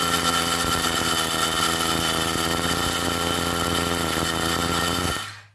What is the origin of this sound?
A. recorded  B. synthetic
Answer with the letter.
A